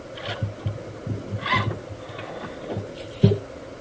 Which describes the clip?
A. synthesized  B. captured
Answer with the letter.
B